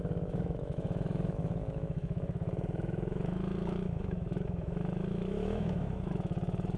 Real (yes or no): no